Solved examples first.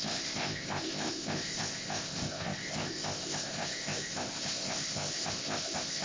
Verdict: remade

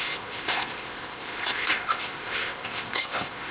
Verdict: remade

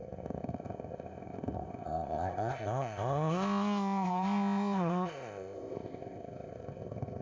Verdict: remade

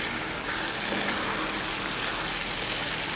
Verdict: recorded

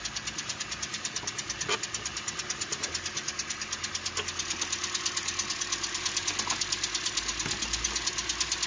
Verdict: recorded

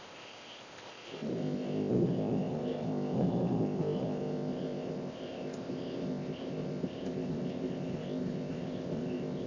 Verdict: remade